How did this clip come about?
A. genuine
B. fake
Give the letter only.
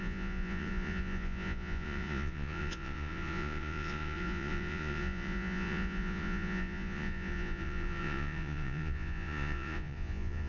B